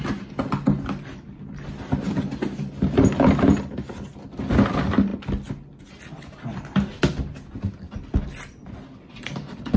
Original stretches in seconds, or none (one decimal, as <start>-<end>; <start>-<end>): 0.0-9.8